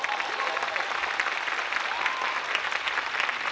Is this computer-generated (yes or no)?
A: no